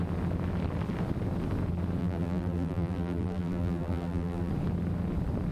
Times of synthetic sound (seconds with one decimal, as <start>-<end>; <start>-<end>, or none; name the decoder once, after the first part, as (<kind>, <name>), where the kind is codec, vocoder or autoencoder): 2.0-4.5 (vocoder, BigVGAN v2)